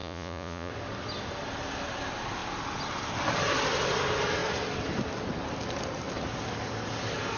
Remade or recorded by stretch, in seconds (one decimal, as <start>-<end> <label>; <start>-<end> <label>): 0.0-0.7 remade; 0.7-7.4 recorded